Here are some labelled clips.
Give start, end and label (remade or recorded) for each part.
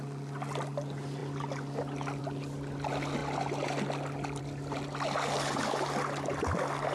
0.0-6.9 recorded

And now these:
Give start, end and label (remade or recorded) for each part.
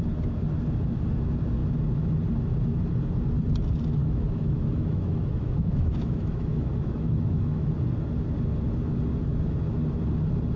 0.0-4.0 recorded; 4.0-7.7 remade; 7.7-10.6 recorded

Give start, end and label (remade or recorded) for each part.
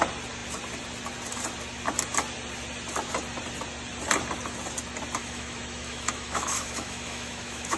0.0-5.2 recorded; 5.2-7.8 remade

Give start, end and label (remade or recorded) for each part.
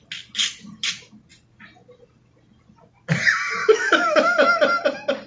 0.0-3.6 recorded; 3.6-4.5 remade; 4.5-5.3 recorded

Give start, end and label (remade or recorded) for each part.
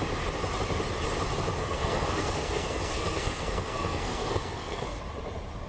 0.0-1.6 recorded; 1.6-5.0 remade; 5.0-5.7 recorded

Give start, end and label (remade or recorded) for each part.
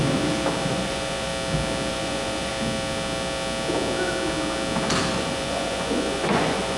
0.0-0.7 recorded; 0.7-1.3 remade; 1.3-1.9 recorded; 1.9-2.5 remade; 2.5-5.1 recorded; 5.1-6.8 remade